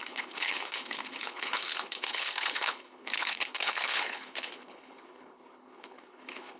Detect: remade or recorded remade